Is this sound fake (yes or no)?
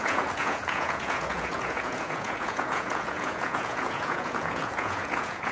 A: yes